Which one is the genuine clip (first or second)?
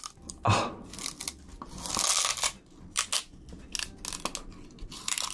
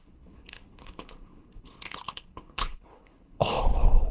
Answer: first